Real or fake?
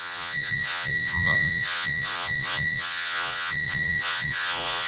fake